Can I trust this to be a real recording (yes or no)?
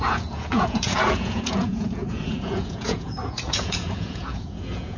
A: no